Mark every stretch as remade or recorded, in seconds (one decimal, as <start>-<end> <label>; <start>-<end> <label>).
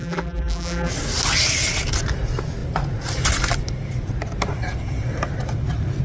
0.0-0.9 remade; 0.9-6.0 recorded